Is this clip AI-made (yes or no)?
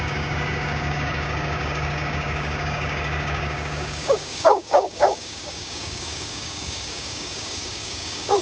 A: yes